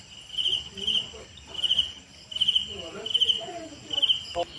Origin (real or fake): real